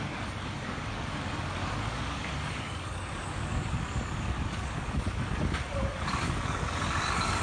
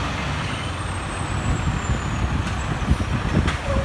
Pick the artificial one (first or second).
first